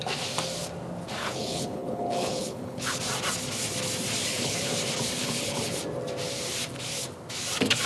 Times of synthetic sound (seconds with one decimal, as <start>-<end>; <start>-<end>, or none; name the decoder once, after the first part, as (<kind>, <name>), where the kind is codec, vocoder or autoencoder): 1.2-3.0 (codec, HILCodec); 4.2-4.7; 5.2-5.8